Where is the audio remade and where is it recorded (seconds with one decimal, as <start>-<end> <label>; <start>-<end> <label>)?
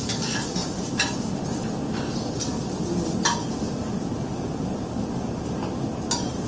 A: 0.0-6.5 recorded